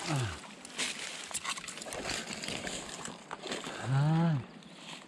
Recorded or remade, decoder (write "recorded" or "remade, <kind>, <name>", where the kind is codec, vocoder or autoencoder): recorded